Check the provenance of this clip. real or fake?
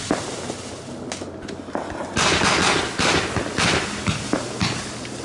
real